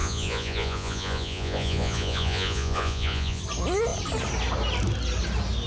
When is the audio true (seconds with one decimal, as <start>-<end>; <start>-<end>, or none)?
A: 3.4-5.7

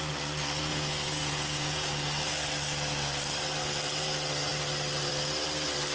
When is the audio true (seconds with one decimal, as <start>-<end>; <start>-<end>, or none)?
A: 0.0-0.7; 1.9-5.9

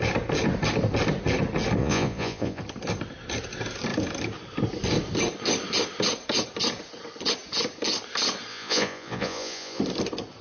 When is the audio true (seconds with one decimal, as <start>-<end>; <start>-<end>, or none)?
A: 0.0-1.8; 2.6-8.5; 9.8-10.4